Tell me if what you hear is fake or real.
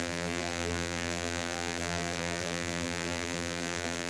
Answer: fake